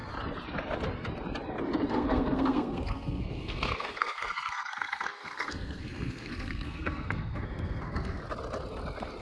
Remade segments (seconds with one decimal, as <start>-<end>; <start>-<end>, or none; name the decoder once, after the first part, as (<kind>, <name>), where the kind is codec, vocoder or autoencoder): 1.9-8.2 (codec, SNAC)